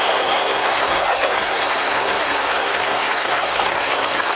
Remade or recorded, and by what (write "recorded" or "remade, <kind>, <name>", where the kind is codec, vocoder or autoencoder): remade, codec, SNAC